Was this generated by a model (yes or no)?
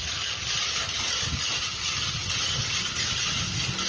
no